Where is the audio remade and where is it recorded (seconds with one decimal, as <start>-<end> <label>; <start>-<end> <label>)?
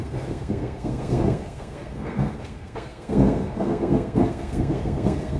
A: 0.0-5.4 remade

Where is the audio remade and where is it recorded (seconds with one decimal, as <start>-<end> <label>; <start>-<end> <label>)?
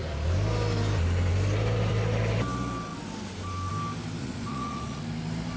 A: 0.0-4.2 recorded; 4.2-5.0 remade; 5.0-5.6 recorded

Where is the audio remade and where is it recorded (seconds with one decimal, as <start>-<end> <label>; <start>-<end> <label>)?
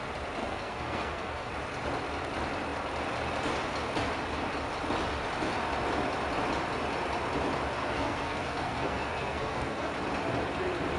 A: 0.0-0.4 recorded; 0.4-1.5 remade; 1.5-7.8 recorded; 7.8-9.9 remade; 9.9-11.0 recorded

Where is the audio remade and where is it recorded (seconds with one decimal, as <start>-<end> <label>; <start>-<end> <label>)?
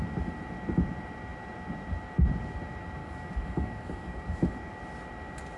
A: 0.0-3.0 recorded; 3.0-4.7 remade; 4.7-5.6 recorded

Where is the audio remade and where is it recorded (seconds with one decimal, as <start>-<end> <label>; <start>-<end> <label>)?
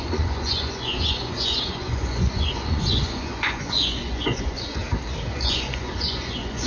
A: 0.0-4.8 remade; 4.8-5.3 recorded; 5.3-6.7 remade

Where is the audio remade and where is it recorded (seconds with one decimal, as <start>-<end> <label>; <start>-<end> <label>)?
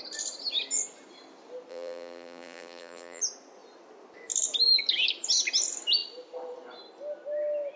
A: 0.0-1.7 recorded; 1.7-3.2 remade; 3.2-7.8 recorded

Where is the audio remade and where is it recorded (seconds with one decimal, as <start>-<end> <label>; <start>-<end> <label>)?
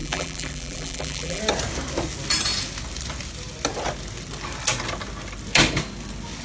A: 0.0-1.4 remade; 1.4-6.4 recorded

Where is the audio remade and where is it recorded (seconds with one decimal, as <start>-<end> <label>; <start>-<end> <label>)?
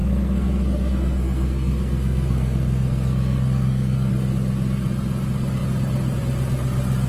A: 0.0-4.1 remade; 4.1-7.1 recorded